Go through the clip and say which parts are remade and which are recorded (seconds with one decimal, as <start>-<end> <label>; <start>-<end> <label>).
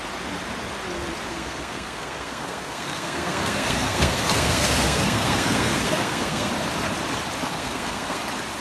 0.0-1.3 recorded; 1.3-6.5 remade; 6.5-7.5 recorded; 7.5-8.2 remade; 8.2-8.6 recorded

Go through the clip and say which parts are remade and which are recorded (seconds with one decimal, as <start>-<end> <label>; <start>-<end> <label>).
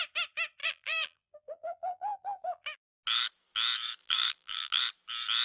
0.0-0.6 recorded; 0.6-2.9 remade; 2.9-4.0 recorded; 4.0-4.8 remade; 4.8-5.4 recorded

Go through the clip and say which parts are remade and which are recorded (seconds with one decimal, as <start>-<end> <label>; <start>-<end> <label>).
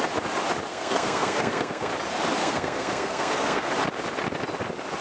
0.0-0.7 recorded; 0.7-1.9 remade; 1.9-2.4 recorded; 2.4-3.7 remade; 3.7-5.0 recorded